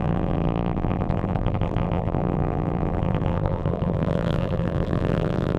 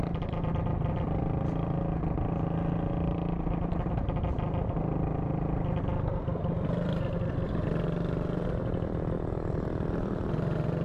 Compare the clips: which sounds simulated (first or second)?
first